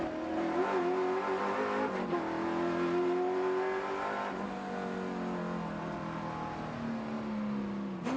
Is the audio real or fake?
real